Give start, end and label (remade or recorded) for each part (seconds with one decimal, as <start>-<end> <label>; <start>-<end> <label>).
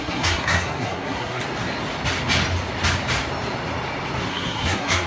0.0-1.4 remade; 1.4-4.3 recorded; 4.3-5.1 remade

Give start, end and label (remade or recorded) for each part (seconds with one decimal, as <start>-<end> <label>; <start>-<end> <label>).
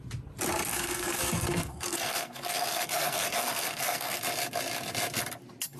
0.0-0.7 recorded; 0.7-4.2 remade; 4.2-5.8 recorded